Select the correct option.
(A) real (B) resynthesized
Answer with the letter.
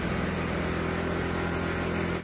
A